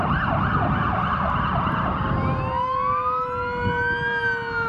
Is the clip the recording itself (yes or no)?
yes